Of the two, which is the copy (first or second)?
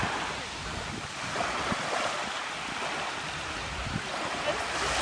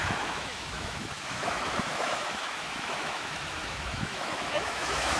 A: second